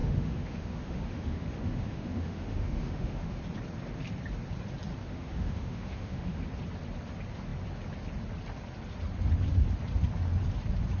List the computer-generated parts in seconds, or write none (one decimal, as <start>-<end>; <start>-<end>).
0.0-3.4; 5.0-6.4